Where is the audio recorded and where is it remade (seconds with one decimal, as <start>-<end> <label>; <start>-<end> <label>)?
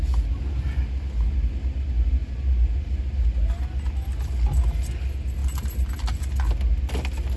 0.0-5.4 recorded; 5.4-5.9 remade; 5.9-7.4 recorded